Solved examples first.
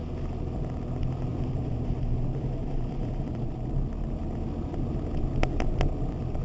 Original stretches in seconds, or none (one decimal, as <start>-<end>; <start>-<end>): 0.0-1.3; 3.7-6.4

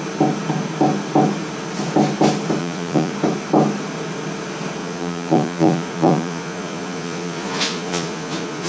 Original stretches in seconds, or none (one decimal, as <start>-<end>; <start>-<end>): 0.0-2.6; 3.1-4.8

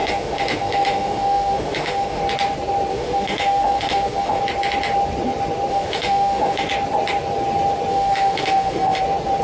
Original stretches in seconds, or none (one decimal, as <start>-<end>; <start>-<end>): 2.2-2.9; 4.4-5.7; 6.7-7.9; 9.0-9.4

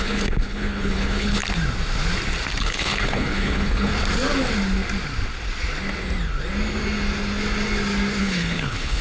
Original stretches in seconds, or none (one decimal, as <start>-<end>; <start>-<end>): 1.4-2.6; 3.9-8.2

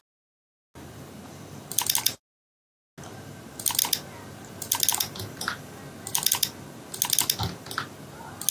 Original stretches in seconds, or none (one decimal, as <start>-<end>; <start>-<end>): 0.0-4.9; 5.8-8.5

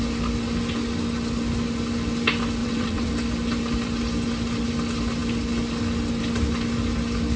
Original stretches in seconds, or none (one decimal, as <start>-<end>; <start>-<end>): 0.0-2.6; 3.1-7.4